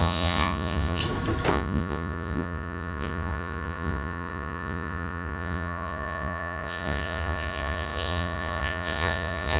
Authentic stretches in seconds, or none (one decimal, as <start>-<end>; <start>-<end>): 1.0-1.5